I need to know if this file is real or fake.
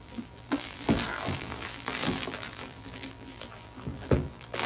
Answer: fake